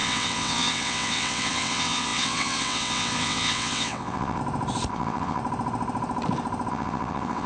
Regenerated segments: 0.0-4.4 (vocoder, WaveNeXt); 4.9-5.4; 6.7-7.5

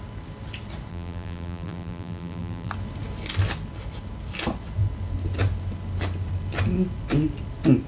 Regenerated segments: 0.9-2.7 (vocoder, BigVGAN v2)